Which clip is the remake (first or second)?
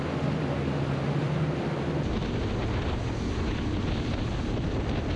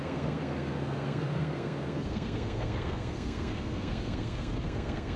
second